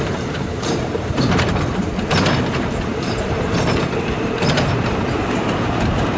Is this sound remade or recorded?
remade